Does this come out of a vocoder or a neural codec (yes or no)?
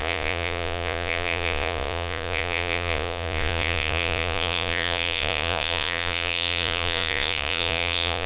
yes